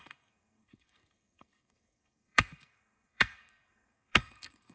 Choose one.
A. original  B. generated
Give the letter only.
B